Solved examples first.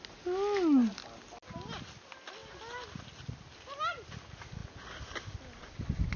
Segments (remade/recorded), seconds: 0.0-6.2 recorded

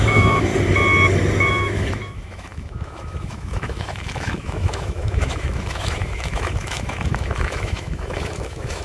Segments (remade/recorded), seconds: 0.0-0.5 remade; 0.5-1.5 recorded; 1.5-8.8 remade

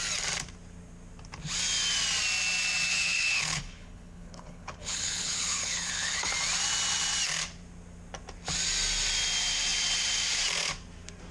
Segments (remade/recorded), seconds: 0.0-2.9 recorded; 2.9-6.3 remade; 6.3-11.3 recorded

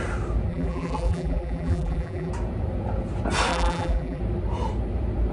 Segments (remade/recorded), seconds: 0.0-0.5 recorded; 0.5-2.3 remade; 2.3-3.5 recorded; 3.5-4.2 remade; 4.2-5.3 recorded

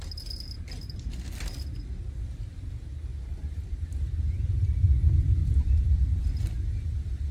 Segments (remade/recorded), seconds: 0.0-3.1 recorded; 3.1-4.7 remade; 4.7-5.4 recorded; 5.4-6.5 remade; 6.5-7.3 recorded